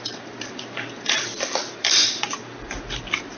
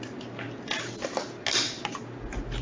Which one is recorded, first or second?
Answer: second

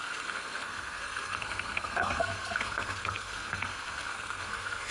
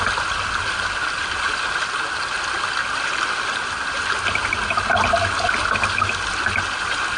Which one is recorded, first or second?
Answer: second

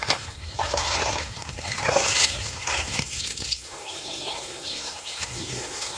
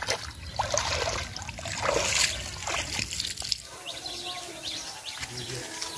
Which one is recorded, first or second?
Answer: second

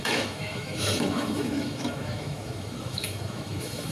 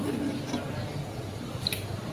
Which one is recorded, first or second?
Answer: second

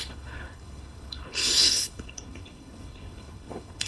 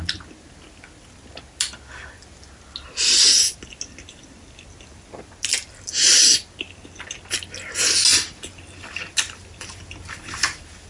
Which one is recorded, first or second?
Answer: second